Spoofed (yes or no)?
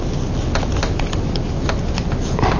no